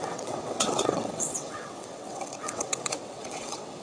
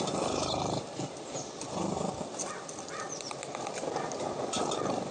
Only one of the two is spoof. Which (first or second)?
first